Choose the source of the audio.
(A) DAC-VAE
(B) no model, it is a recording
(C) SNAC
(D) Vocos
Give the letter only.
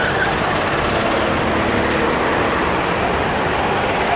B